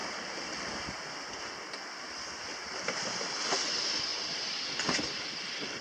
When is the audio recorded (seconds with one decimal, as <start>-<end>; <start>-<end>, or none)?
0.0-5.8